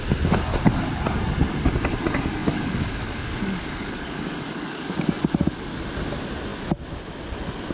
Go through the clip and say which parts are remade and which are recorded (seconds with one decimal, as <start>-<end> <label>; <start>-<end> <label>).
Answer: 0.0-2.4 recorded; 2.4-5.0 remade; 5.0-7.7 recorded